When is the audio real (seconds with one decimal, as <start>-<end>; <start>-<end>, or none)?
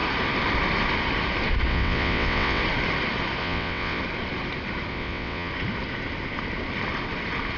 0.0-1.7; 2.6-3.4; 4.0-4.9; 5.5-7.6